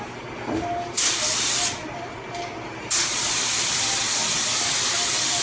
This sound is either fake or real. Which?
real